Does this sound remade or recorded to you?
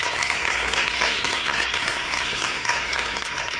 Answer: remade